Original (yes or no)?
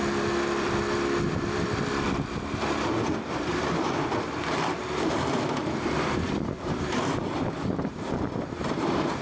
no